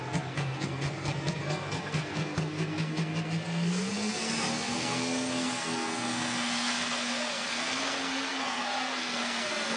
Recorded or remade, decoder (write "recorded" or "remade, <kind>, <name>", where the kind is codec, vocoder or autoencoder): remade, codec, SNAC